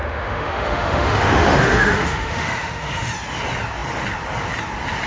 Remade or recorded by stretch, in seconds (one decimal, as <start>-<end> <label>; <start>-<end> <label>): 0.0-3.1 remade; 3.1-5.1 recorded